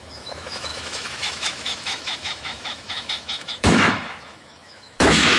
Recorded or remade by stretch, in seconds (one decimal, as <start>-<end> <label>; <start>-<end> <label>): 0.0-5.4 remade